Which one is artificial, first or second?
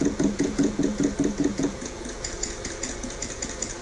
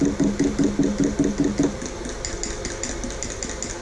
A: first